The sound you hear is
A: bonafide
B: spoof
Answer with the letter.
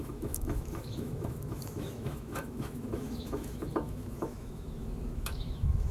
B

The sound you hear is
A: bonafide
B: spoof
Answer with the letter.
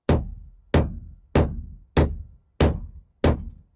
A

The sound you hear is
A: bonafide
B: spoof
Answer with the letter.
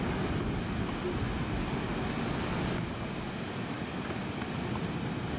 A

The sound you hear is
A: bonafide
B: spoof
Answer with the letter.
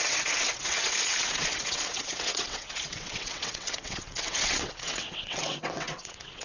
B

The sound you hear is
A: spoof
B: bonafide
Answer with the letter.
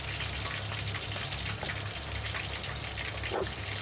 B